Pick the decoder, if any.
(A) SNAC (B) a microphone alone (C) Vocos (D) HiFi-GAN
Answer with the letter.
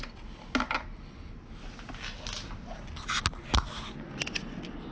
B